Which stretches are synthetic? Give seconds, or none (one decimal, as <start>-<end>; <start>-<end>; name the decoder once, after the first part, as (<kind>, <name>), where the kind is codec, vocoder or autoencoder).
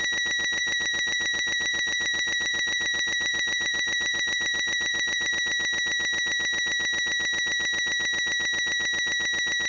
0.6-5.3 (vocoder, BigVGAN v2)